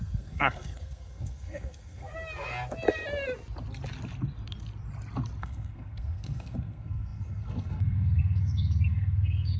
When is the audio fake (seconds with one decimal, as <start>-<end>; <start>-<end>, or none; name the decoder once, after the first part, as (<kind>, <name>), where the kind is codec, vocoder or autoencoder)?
0.0-2.1 (codec, SNAC); 5.4-9.6